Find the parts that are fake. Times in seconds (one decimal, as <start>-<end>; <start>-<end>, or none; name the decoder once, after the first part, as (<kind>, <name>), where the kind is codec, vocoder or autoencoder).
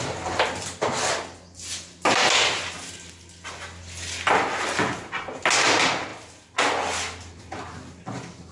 none